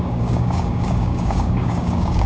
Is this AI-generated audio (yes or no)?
yes